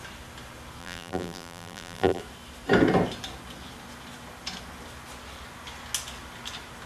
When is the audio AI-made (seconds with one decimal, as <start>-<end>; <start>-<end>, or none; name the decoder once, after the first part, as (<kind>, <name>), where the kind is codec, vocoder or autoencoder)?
0.8-2.2 (vocoder, BigVGAN v2)